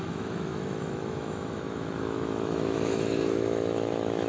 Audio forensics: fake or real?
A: fake